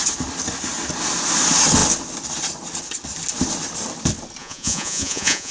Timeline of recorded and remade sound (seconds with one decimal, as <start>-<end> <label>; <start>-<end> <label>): 0.0-4.4 recorded; 4.4-5.5 remade